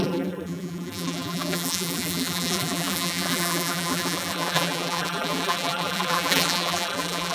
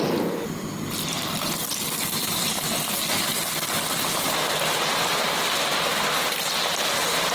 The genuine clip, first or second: second